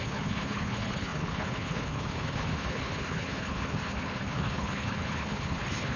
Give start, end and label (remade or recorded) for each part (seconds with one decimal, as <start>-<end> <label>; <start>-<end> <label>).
0.0-6.0 remade